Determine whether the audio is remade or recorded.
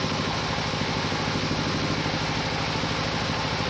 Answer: recorded